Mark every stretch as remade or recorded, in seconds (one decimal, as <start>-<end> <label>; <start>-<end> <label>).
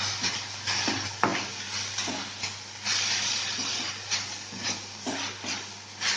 0.0-6.2 recorded